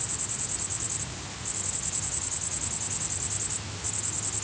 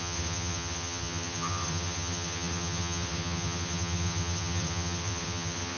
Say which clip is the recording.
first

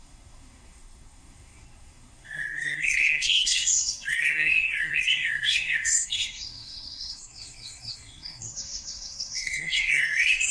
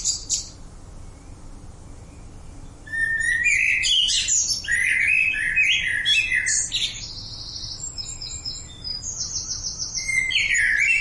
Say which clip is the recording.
second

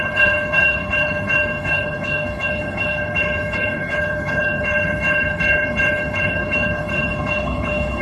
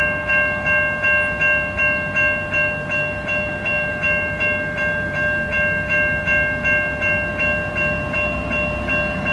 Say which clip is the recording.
second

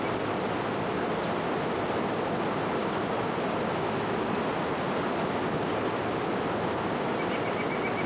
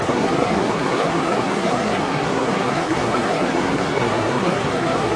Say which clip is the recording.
first